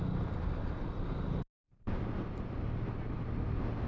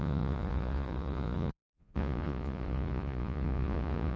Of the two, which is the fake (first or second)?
second